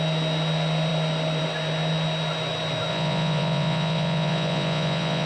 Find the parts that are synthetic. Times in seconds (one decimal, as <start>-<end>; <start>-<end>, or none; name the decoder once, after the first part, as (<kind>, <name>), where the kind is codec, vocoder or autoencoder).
2.9-5.3 (vocoder, Vocos)